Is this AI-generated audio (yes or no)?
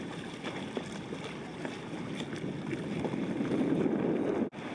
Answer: no